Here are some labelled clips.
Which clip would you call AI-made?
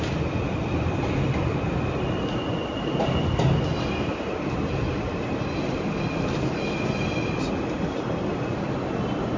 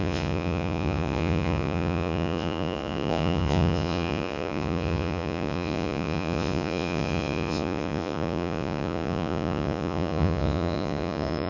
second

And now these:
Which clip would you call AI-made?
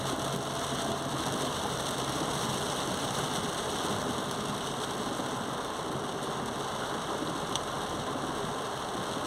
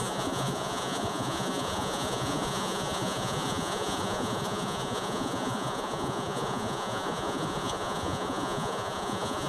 second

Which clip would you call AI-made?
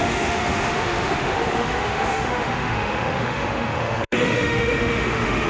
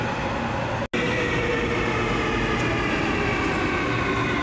first